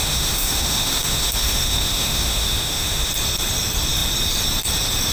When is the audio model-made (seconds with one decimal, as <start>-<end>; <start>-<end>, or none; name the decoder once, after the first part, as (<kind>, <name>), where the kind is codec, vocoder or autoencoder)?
0.0-3.1 (autoencoder, DAC-VAE)

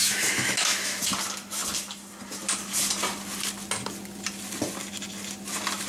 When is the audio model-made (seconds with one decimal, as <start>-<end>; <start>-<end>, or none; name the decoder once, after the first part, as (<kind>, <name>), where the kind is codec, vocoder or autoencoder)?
0.0-1.0 (autoencoder, DAC-VAE)

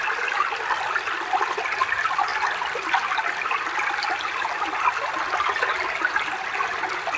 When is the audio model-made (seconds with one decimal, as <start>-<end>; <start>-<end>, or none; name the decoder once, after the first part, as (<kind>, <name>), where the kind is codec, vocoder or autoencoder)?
none

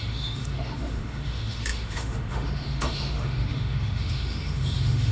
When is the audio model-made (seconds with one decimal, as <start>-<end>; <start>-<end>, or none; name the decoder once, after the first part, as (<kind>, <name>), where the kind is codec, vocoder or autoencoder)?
0.0-5.1 (autoencoder, DAC-VAE)

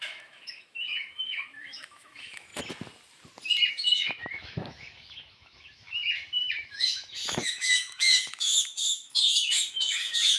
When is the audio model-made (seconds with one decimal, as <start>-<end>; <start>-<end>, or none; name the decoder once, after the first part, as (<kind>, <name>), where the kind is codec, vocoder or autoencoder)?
0.0-2.5 (autoencoder, DAC-VAE); 3.7-10.4

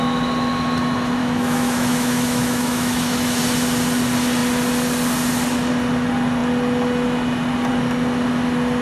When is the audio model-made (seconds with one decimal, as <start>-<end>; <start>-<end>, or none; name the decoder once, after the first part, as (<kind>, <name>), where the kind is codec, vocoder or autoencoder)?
1.2-3.4 (autoencoder, DAC-VAE)

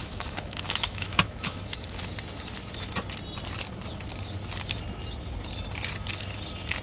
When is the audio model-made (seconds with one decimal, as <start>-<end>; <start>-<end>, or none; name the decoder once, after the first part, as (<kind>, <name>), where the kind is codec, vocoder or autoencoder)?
0.0-2.0 (autoencoder, DAC-VAE)

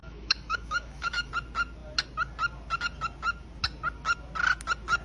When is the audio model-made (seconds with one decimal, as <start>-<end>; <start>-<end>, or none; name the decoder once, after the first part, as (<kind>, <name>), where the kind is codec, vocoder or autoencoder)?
0.0-1.3 (autoencoder, DAC-VAE)